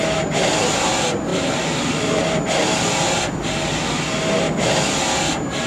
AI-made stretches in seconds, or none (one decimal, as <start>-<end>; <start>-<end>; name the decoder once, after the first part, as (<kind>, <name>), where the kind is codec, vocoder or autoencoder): 1.3-4.7 (vocoder, BigVGAN v2)

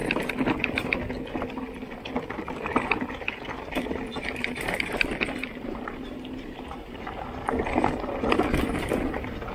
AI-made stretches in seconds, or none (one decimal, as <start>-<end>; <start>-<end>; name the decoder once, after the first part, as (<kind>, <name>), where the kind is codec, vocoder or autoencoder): 4.2-7.2 (vocoder, BigVGAN v2)